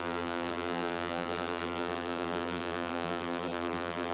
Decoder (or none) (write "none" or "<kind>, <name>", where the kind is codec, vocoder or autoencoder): vocoder, BigVGAN v2